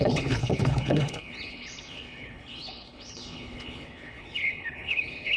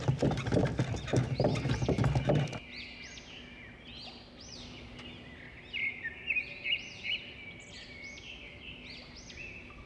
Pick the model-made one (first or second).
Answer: first